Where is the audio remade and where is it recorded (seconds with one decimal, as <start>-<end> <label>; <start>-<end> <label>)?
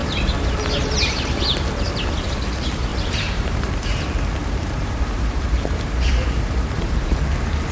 0.0-1.4 remade; 1.4-2.9 recorded; 2.9-3.7 remade; 3.7-4.4 recorded; 4.4-7.2 remade; 7.2-7.7 recorded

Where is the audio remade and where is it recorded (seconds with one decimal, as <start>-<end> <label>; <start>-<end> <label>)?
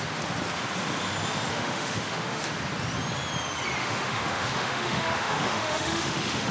0.0-1.5 recorded; 1.5-2.5 remade; 2.5-3.8 recorded; 3.8-6.5 remade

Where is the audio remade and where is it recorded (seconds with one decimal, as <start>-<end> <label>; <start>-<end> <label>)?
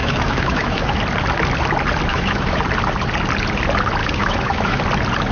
0.0-1.0 remade; 1.0-2.1 recorded; 2.1-2.6 remade; 2.6-4.0 recorded; 4.0-4.8 remade; 4.8-5.3 recorded